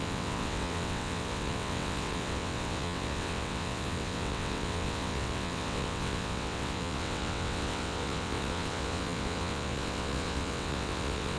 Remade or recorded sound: remade